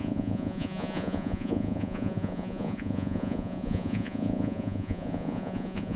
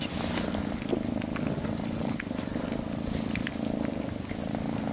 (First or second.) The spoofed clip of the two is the first